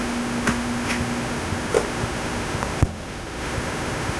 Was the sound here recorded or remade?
remade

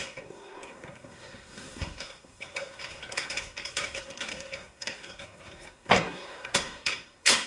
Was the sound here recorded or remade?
remade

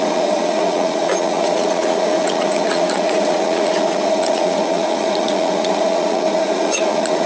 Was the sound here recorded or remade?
remade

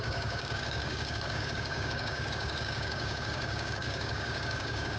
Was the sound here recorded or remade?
remade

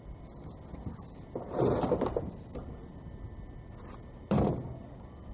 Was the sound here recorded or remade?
recorded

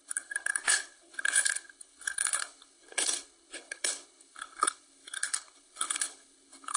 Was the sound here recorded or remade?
remade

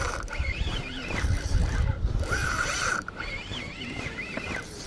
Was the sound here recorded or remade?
remade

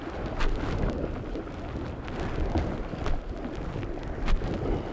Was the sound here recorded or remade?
recorded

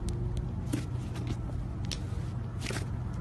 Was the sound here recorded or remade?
recorded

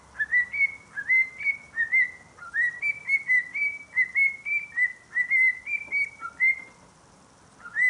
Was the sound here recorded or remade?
recorded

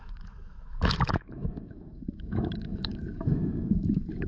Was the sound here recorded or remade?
remade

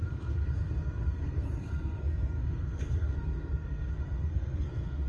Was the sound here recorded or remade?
remade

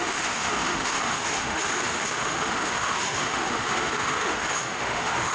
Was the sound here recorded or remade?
remade